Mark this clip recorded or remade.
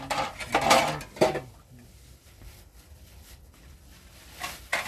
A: recorded